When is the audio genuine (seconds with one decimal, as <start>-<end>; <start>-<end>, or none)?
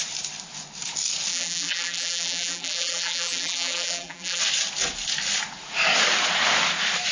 0.0-1.3; 4.4-7.1